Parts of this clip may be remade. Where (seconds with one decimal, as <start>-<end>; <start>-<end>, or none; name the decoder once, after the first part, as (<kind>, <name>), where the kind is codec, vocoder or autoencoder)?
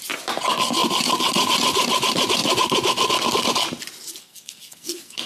4.2-5.3 (codec, SNAC)